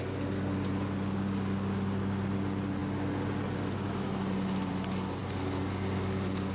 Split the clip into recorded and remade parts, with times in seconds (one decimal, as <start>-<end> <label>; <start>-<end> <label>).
0.0-6.5 recorded